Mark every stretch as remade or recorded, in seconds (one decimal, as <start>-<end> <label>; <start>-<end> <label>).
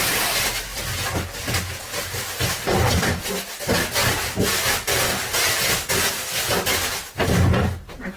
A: 0.0-0.7 recorded; 0.7-1.7 remade; 1.7-8.2 recorded